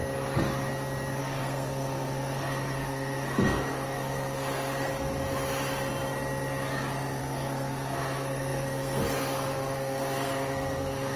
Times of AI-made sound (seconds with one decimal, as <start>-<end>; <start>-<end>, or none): 1.2-4.9; 7.2-11.2